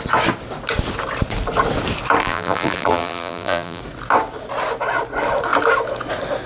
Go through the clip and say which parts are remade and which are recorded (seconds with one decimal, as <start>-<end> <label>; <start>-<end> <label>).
0.0-2.2 recorded; 2.2-3.8 remade; 3.8-6.5 recorded